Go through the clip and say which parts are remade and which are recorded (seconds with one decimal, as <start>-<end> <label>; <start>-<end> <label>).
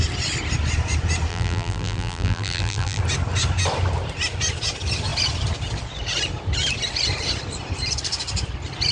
0.0-1.3 recorded; 1.3-3.0 remade; 3.0-8.9 recorded